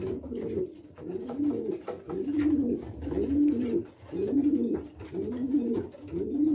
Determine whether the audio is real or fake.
fake